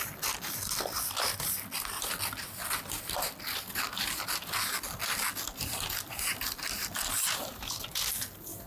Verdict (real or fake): real